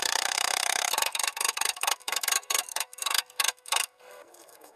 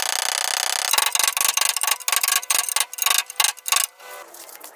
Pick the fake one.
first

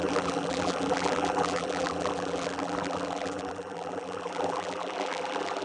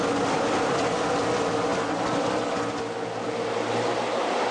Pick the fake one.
first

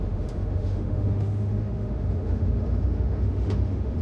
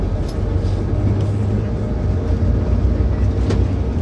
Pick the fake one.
first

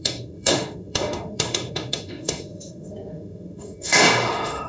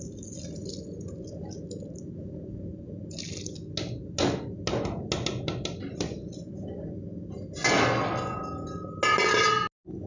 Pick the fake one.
first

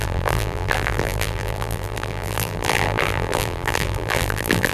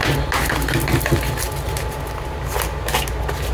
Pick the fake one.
first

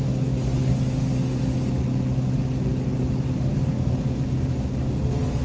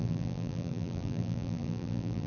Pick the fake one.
second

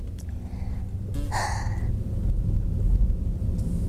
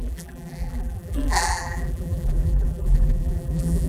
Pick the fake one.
second